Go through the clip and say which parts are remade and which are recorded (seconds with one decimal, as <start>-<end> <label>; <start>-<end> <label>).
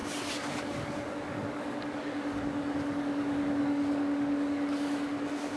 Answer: 0.0-5.6 remade